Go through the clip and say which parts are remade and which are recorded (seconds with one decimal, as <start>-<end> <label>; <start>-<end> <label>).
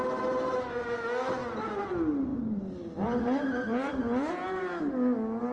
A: 0.0-1.4 recorded; 1.4-1.9 remade; 1.9-2.3 recorded; 2.3-4.3 remade; 4.3-5.5 recorded